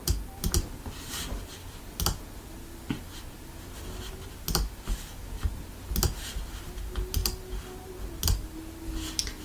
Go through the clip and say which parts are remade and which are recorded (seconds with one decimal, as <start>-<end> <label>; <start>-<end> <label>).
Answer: 0.0-9.4 recorded